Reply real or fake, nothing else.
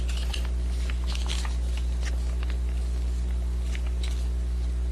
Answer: real